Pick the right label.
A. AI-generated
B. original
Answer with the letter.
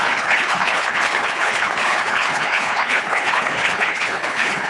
A